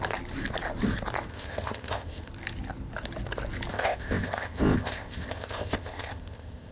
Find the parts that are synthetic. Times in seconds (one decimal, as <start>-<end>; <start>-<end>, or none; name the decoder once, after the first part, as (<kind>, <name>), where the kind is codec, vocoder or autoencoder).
1.3-2.3 (codec, ZipCodec); 3.7-6.7